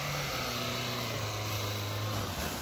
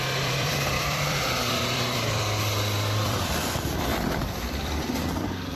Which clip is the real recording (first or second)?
first